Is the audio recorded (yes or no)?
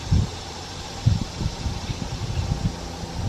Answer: yes